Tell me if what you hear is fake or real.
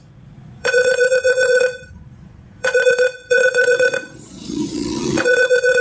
fake